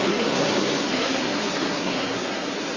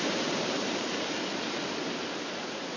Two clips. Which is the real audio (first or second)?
second